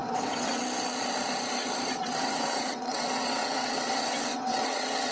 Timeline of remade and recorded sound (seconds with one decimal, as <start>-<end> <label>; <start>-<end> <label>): 0.0-0.6 remade; 0.6-1.9 recorded; 1.9-5.1 remade